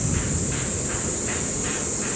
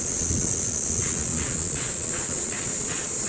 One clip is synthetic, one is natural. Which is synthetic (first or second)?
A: second